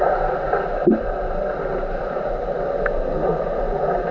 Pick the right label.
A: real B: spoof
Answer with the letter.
A